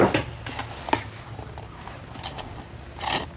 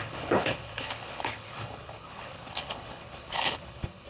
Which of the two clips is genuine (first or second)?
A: first